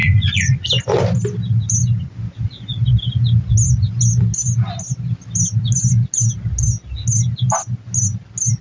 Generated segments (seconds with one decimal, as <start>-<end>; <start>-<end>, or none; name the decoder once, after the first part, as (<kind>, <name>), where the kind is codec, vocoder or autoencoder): 0.0-0.7 (vocoder, Vocos)